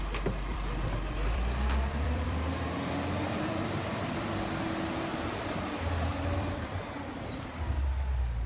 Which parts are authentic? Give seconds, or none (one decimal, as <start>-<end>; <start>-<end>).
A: 0.0-0.5; 4.3-5.1; 7.6-8.5